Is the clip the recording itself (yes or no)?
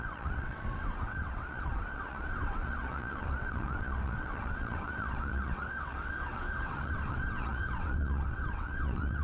no